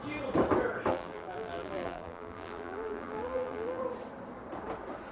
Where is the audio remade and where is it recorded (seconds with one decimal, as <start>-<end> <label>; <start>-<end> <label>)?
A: 0.0-0.9 recorded; 0.9-3.8 remade; 3.8-5.1 recorded